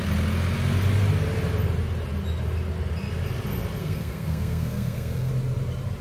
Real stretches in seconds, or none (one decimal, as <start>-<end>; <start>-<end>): 0.0-3.8; 5.3-6.0